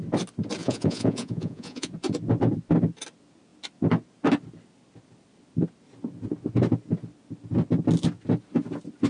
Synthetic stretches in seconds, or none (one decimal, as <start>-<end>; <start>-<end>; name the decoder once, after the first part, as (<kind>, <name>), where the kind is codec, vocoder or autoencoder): 0.6-1.9 (vocoder, Vocos)